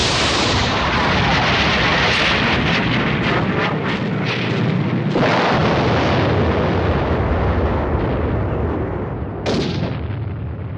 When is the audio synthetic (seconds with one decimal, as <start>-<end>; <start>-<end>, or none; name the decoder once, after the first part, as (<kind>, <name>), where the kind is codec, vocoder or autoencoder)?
none